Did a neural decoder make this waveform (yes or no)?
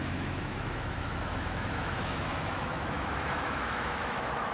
yes